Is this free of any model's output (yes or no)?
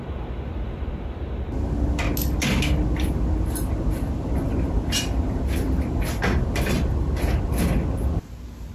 yes